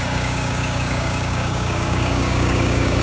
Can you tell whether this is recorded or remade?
remade